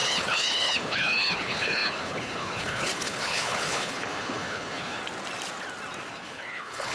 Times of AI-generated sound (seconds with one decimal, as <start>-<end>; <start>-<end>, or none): 0.0-5.0; 6.1-6.9